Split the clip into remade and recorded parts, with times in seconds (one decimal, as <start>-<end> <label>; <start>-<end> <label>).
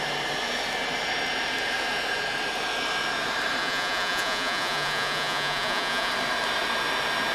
0.0-3.6 recorded; 3.6-6.1 remade; 6.1-7.3 recorded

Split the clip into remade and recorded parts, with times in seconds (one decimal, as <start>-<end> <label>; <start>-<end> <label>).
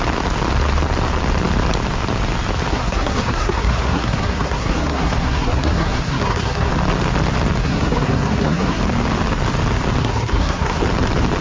0.0-2.7 recorded; 2.7-6.7 remade; 6.7-7.6 recorded; 7.6-8.8 remade; 8.8-10.0 recorded; 10.0-10.8 remade; 10.8-11.4 recorded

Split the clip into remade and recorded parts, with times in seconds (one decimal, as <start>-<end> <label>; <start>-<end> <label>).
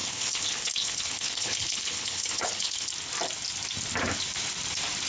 0.0-2.9 remade; 2.9-5.1 recorded